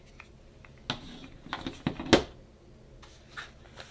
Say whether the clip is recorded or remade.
recorded